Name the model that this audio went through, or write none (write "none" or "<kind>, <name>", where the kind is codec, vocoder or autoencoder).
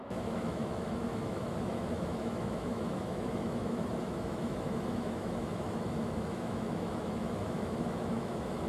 autoencoder, DAC-VAE